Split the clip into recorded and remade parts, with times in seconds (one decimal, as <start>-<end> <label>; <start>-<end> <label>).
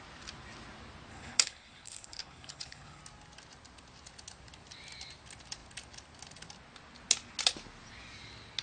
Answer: 0.0-1.1 recorded; 1.1-3.0 remade; 3.0-8.6 recorded